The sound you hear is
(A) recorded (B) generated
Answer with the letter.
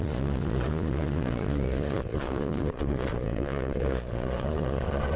B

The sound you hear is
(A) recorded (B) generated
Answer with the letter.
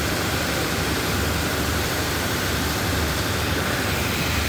B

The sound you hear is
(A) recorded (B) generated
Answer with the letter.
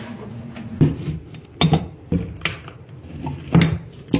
A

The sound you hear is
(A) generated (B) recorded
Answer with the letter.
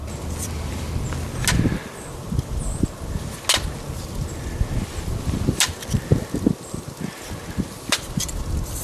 B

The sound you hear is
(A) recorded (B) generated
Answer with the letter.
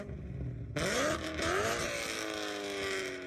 A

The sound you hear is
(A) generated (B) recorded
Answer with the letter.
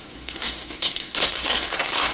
A